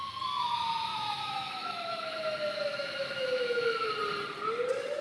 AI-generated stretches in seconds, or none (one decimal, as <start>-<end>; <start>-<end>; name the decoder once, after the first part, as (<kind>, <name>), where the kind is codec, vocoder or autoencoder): 0.9-3.9 (autoencoder, DAC-VAE)